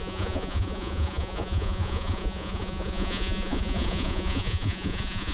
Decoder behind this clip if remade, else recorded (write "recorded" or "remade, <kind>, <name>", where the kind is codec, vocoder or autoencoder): remade, vocoder, Vocos